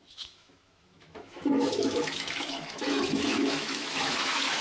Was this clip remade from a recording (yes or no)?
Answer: yes